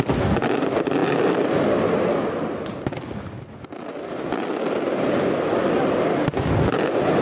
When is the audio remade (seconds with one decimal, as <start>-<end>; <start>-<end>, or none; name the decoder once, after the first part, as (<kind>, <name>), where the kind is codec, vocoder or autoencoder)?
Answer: none